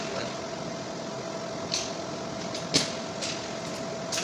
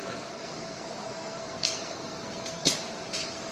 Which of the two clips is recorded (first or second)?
first